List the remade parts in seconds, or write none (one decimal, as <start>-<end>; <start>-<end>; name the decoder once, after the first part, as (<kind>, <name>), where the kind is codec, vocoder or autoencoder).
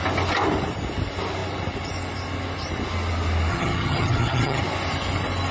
3.5-4.6 (vocoder, HiFi-GAN)